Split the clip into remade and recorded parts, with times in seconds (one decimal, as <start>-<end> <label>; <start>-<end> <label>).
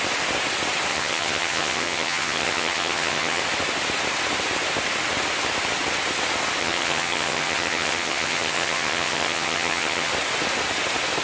0.0-0.9 recorded; 0.9-3.4 remade; 3.4-6.6 recorded; 6.6-10.1 remade; 10.1-11.2 recorded